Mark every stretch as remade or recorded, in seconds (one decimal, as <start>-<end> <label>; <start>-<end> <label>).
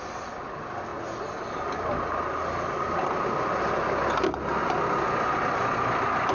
0.0-6.3 recorded